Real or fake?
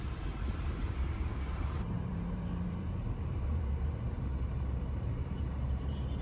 fake